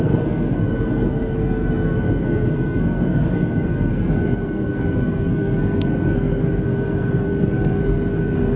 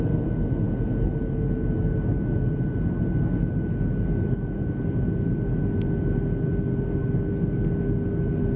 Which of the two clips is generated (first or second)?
first